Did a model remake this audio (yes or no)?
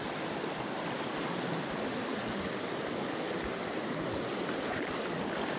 no